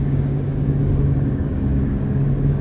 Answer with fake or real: fake